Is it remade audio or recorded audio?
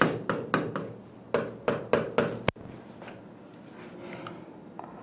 recorded